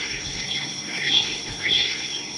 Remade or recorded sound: remade